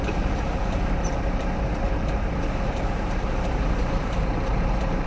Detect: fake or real fake